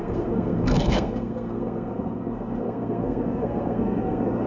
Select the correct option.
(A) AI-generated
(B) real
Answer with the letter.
A